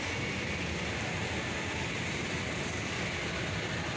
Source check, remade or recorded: recorded